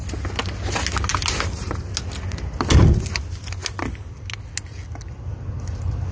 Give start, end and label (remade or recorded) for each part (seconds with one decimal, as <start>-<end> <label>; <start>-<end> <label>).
0.0-6.1 recorded